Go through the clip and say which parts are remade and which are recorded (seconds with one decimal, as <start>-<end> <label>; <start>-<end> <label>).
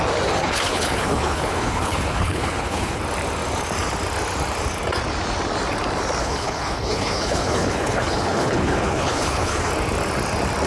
0.0-0.4 recorded; 0.4-3.0 remade; 3.0-6.2 recorded; 6.2-9.7 remade; 9.7-10.7 recorded